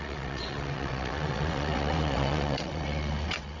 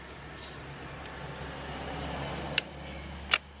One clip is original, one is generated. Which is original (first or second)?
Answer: second